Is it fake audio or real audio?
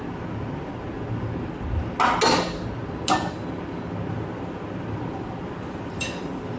real